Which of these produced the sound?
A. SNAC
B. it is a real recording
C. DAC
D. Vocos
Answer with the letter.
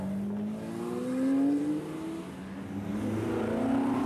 B